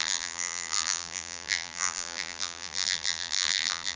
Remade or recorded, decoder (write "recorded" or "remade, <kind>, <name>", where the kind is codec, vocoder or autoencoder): remade, vocoder, BigVGAN v2